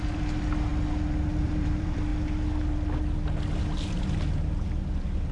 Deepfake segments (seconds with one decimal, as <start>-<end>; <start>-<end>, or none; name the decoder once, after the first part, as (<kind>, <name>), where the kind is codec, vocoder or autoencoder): 0.0-0.7 (vocoder, BigVGAN v2); 1.3-2.1